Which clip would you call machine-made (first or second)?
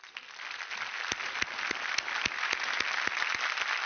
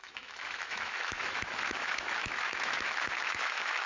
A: second